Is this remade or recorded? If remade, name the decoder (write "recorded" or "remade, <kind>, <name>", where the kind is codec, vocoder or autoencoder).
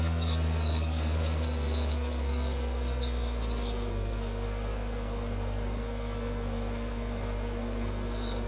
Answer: remade, codec, SNAC